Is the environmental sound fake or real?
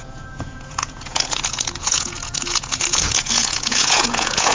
fake